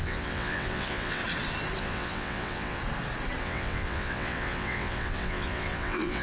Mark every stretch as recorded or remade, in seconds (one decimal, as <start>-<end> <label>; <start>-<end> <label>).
0.0-1.2 remade; 1.2-1.8 recorded; 1.8-2.8 remade; 2.8-3.4 recorded; 3.4-6.2 remade